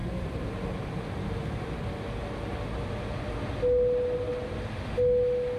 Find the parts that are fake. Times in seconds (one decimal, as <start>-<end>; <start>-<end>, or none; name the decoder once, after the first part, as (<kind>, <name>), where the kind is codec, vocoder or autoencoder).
0.0-1.8 (vocoder, BigVGAN v2)